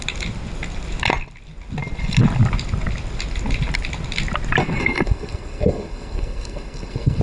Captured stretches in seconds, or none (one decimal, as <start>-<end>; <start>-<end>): 0.0-4.6

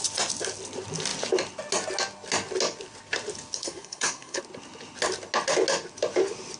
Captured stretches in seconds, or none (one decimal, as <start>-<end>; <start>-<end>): 0.0-3.6; 4.4-6.6

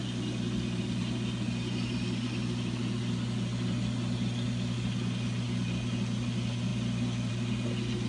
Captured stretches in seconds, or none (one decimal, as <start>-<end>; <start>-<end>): 0.0-8.1

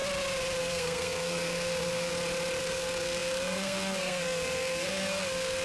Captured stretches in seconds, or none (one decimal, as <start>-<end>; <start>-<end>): 0.0-0.6; 2.1-2.6

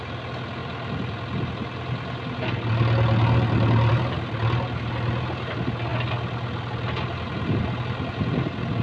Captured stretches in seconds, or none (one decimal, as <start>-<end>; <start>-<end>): 0.0-8.8

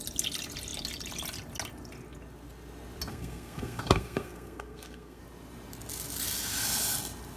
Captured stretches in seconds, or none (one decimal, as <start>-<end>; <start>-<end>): 0.0-3.1; 5.2-7.4

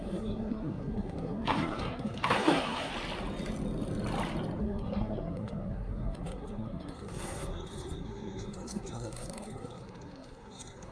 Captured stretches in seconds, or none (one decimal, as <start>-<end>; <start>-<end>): 2.9-4.6

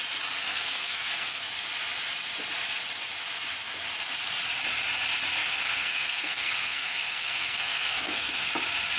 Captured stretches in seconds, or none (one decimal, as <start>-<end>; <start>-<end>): 0.0-0.4; 1.4-5.4; 8.5-9.0